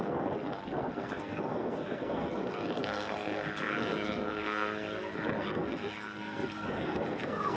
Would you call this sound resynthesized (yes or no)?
yes